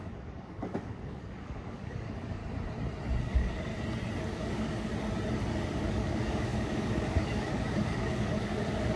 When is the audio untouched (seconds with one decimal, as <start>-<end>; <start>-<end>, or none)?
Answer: 2.4-3.2; 3.7-4.2; 4.9-5.8